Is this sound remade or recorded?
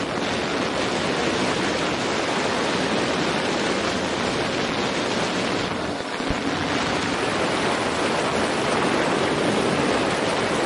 recorded